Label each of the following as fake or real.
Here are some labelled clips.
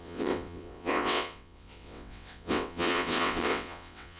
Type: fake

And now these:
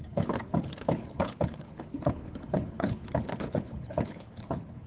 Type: fake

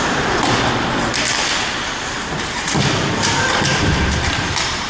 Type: real